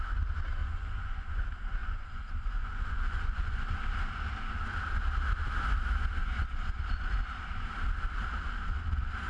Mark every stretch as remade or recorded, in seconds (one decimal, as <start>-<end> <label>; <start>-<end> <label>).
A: 0.0-0.6 recorded; 0.6-1.4 remade; 1.4-1.8 recorded; 1.8-3.6 remade; 3.6-6.2 recorded; 6.2-6.8 remade; 6.8-9.3 recorded